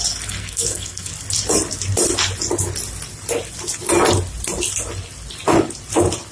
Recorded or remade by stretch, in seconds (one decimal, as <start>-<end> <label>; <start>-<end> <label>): 0.0-0.4 recorded; 0.4-1.1 remade; 1.1-6.3 recorded